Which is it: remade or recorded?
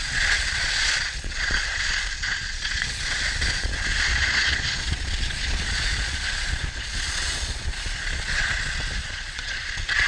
remade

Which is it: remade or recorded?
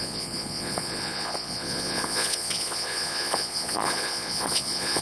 remade